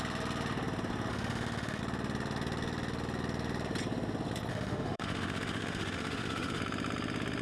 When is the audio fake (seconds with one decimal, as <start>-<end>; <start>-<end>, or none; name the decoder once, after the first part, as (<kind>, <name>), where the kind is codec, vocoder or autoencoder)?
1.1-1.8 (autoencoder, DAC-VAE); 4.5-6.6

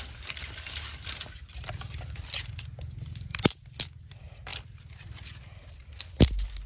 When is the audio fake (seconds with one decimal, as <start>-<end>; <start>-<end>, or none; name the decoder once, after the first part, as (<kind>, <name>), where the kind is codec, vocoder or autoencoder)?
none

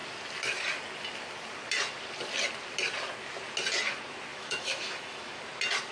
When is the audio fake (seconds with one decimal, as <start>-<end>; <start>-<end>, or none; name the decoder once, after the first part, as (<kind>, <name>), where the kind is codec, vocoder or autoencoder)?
4.3-5.4 (autoencoder, DAC-VAE)

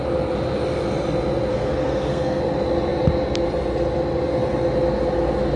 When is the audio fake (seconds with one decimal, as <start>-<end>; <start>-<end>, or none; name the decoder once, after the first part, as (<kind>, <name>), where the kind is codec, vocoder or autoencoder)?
1.5-2.4 (codec, SNAC)

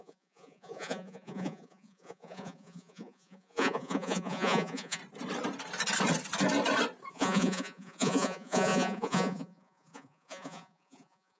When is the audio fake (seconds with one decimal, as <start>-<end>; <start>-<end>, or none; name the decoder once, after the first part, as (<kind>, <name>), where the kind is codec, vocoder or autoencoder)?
0.0-5.0 (vocoder, Vocos); 7.1-11.4

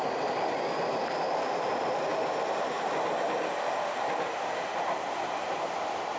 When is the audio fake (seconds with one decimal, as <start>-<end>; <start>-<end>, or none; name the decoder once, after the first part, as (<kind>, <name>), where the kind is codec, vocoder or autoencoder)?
none

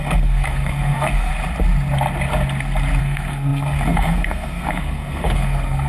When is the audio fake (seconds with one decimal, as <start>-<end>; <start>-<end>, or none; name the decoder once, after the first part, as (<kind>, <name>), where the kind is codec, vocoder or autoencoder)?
0.0-1.3 (codec, SNAC); 3.0-5.9